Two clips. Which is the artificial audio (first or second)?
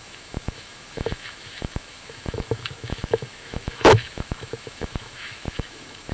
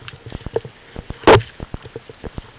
first